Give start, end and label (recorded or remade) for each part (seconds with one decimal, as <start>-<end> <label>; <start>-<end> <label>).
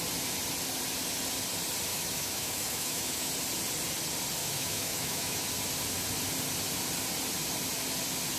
0.0-1.9 recorded; 1.9-3.3 remade; 3.3-4.4 recorded; 4.4-5.5 remade; 5.5-8.4 recorded